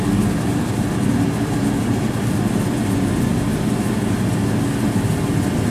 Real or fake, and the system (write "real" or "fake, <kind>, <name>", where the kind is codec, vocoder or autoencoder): real